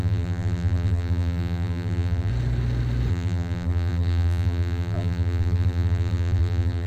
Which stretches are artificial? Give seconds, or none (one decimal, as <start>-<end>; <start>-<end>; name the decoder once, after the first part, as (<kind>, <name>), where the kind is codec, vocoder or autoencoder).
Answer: 0.0-2.3 (vocoder, BigVGAN v2); 3.1-6.9

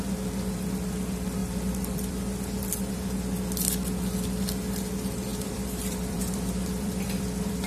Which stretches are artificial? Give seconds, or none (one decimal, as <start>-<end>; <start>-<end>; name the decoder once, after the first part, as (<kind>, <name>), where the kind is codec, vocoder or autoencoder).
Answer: 1.4-2.9 (vocoder, BigVGAN v2); 5.3-7.7

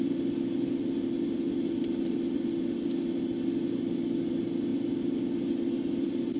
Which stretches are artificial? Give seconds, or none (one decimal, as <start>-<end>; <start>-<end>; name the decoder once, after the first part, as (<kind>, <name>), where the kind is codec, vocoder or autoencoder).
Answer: none

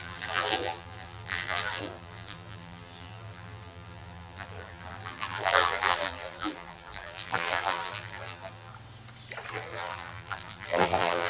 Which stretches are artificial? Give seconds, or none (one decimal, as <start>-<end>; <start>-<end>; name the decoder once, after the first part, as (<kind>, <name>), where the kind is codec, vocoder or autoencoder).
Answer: 0.0-8.7 (vocoder, BigVGAN v2); 9.5-11.3

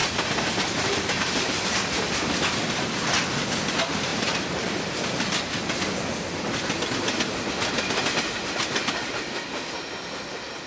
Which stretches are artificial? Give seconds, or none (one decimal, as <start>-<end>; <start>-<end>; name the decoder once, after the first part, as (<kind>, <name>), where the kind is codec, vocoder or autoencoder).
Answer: 0.0-1.9 (vocoder, BigVGAN v2); 4.1-5.0